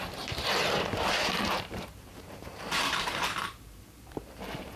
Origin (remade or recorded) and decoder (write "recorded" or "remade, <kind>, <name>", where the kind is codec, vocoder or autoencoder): remade, vocoder, BigVGAN v2